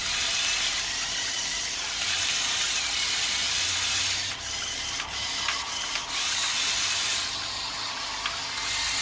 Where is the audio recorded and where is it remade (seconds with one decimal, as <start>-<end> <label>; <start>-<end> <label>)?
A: 0.0-5.1 remade; 5.1-6.0 recorded; 6.0-7.5 remade; 7.5-9.0 recorded